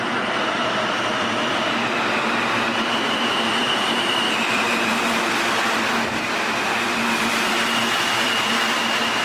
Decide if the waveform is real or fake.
fake